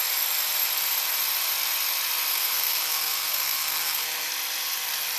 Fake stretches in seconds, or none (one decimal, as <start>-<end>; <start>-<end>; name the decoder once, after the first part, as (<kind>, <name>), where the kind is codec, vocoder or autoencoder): 2.3-4.3 (codec, SNAC)